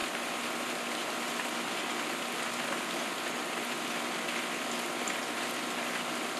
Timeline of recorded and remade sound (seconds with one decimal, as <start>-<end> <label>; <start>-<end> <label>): 0.0-6.4 recorded